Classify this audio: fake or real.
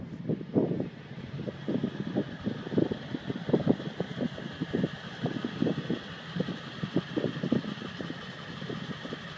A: real